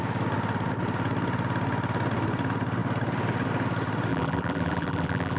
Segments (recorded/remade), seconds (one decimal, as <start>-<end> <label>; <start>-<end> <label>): 0.0-4.1 recorded; 4.1-5.4 remade